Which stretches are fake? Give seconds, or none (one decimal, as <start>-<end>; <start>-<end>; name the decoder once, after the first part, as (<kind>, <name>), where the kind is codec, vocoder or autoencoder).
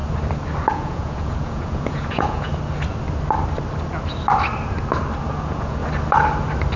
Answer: 0.7-2.5 (vocoder, Vocos); 5.3-5.8